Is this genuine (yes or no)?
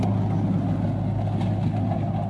yes